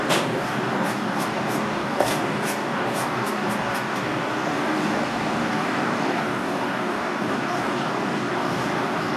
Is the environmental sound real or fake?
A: fake